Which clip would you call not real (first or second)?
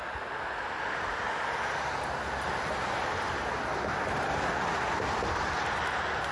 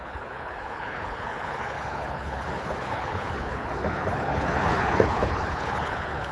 second